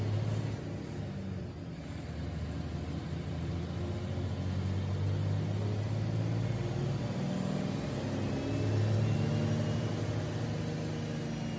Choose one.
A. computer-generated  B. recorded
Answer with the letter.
B